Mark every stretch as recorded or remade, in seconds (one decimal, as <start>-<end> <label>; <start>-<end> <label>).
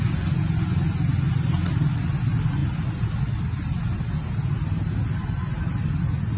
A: 0.0-2.6 recorded; 2.6-3.8 remade; 3.8-6.4 recorded